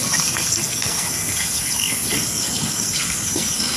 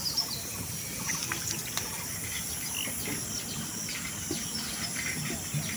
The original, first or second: second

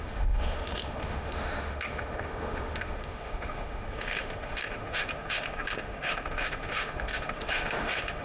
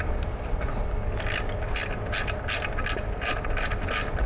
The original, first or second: second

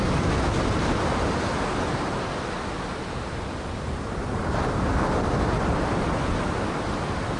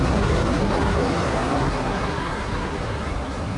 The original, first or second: first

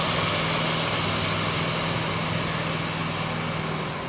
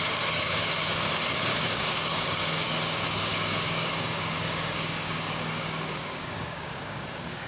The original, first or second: first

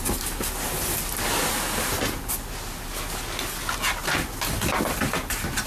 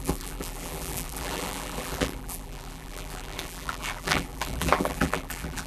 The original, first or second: first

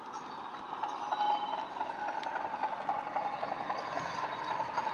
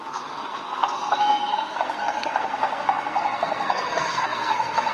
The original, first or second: first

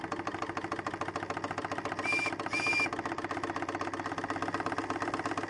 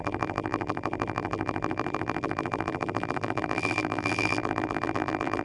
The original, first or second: first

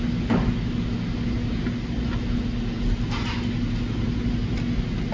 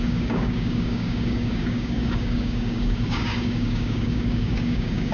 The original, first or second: first